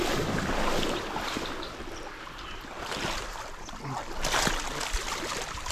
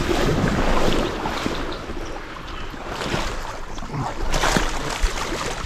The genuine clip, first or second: first